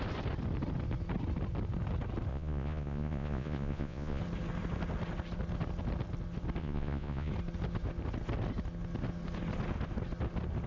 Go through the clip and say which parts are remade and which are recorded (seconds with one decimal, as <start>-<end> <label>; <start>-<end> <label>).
0.0-2.3 recorded; 2.3-4.2 remade; 4.2-6.6 recorded; 6.6-7.3 remade; 7.3-10.7 recorded